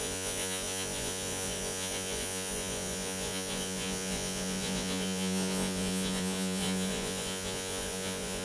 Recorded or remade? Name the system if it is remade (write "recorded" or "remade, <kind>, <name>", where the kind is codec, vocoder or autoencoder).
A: remade, vocoder, Vocos